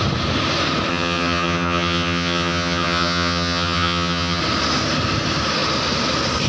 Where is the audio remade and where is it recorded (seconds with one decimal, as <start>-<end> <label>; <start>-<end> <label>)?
0.0-0.9 recorded; 0.9-4.4 remade; 4.4-6.5 recorded